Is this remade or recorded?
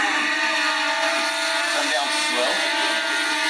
recorded